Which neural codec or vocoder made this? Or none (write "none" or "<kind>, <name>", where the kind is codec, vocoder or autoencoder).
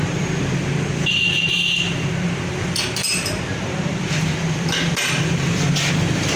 vocoder, BigVGAN v2